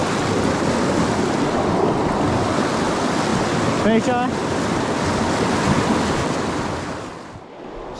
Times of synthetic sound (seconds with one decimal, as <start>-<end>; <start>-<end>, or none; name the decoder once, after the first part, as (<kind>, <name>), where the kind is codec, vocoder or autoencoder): none